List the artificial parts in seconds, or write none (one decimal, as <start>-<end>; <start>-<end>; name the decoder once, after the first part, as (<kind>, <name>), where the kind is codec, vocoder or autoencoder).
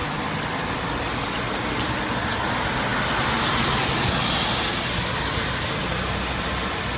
none